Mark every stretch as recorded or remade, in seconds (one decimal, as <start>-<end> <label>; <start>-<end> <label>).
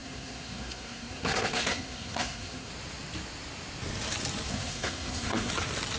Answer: 0.0-2.7 remade; 2.7-4.5 recorded; 4.5-5.5 remade; 5.5-6.0 recorded